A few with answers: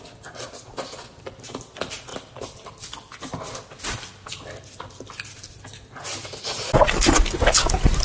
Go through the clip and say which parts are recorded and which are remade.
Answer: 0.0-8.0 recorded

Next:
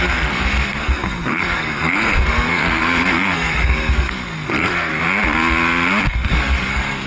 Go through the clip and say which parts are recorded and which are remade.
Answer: 0.0-4.9 remade; 4.9-6.0 recorded; 6.0-7.1 remade

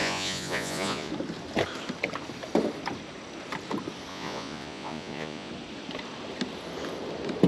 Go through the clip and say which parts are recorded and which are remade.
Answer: 0.0-1.1 remade; 1.1-4.1 recorded; 4.1-5.5 remade; 5.5-7.5 recorded